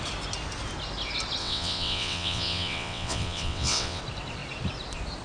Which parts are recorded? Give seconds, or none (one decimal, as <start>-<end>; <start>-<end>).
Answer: 0.0-1.4; 4.0-5.2